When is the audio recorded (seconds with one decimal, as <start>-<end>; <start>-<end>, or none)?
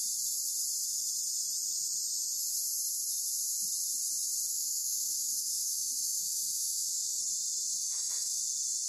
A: 0.0-4.5; 7.2-7.8; 8.4-8.9